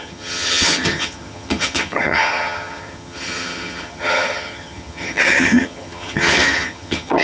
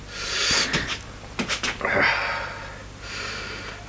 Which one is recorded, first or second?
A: second